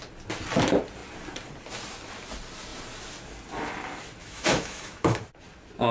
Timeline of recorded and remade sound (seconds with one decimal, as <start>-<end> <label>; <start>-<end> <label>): 0.0-4.2 recorded; 4.2-5.2 remade; 5.2-5.9 recorded